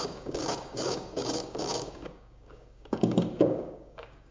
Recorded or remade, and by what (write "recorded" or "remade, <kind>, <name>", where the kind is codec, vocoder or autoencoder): remade, codec, DAC